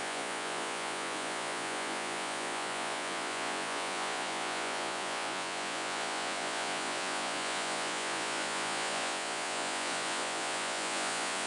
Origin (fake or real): fake